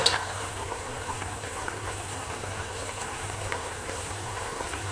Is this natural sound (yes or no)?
no